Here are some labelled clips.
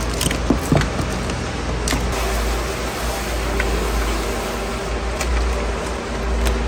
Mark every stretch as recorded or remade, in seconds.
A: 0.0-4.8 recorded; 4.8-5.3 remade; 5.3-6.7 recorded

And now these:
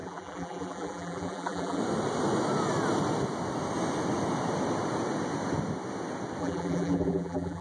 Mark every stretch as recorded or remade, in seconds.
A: 0.0-1.8 remade; 1.8-6.4 recorded; 6.4-7.6 remade

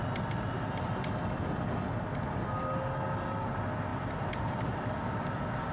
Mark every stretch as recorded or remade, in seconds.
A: 0.0-3.9 recorded; 3.9-5.7 remade

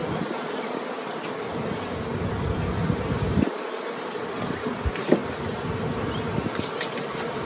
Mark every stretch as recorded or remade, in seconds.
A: 0.0-0.6 recorded; 0.6-1.1 remade; 1.1-1.8 recorded; 1.8-5.2 remade; 5.2-5.8 recorded; 5.8-7.4 remade

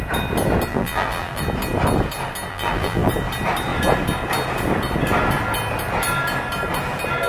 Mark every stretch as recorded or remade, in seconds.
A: 0.0-0.7 recorded; 0.7-1.4 remade; 1.4-2.5 recorded; 2.5-3.1 remade; 3.1-7.3 recorded

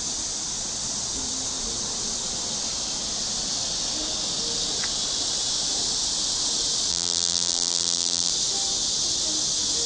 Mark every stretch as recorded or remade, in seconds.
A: 0.0-6.9 recorded; 6.9-8.3 remade; 8.3-9.9 recorded

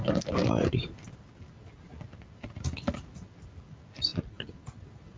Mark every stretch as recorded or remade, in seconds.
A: 0.0-5.2 recorded